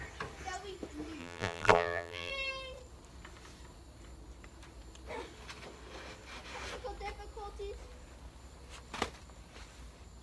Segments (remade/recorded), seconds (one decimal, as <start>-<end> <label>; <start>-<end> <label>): 0.0-1.2 recorded; 1.2-2.3 remade; 2.3-10.2 recorded